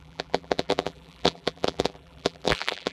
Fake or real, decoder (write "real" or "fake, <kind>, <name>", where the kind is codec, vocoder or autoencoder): fake, vocoder, BigVGAN v2